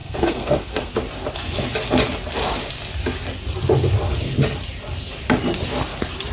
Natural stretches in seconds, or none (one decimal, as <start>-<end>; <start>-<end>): 0.9-6.3